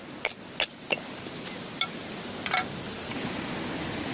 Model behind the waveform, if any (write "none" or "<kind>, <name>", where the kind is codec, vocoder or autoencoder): none